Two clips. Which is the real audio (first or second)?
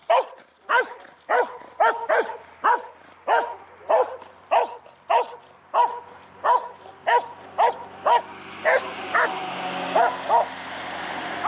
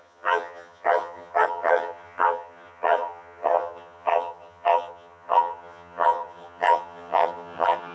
first